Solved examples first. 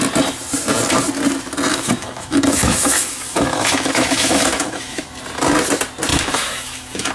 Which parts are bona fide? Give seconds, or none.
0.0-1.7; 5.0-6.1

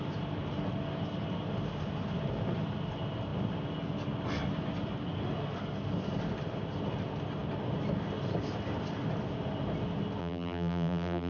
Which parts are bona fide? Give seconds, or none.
0.0-10.2

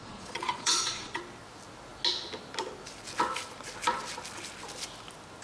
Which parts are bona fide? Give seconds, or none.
1.2-5.4

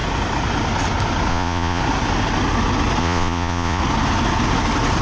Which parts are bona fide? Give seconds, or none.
0.0-1.3; 1.8-3.0; 3.8-5.0

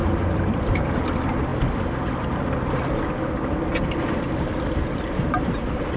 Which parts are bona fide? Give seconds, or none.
1.0-6.0